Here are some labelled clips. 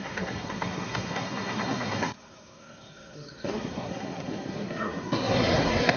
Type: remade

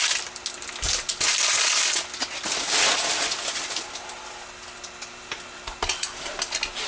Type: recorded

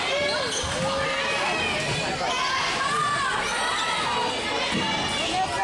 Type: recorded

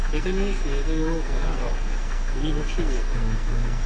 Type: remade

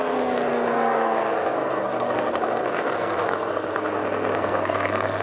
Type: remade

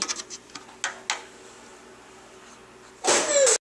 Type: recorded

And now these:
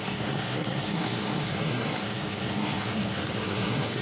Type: remade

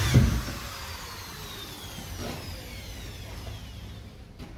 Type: recorded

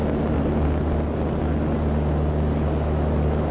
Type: recorded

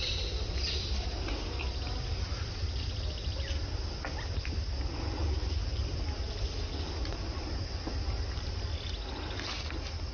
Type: recorded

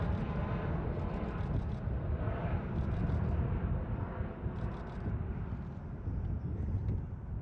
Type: recorded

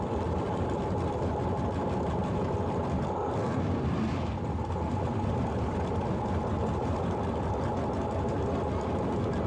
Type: recorded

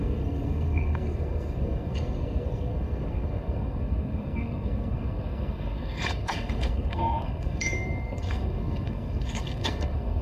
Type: remade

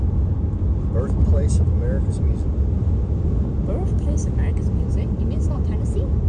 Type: recorded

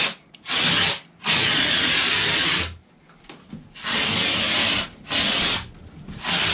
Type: recorded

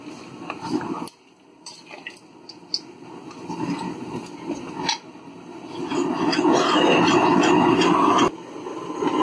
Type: recorded